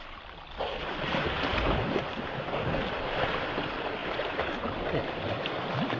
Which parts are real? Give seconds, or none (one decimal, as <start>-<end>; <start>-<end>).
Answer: 0.0-4.0; 4.6-6.0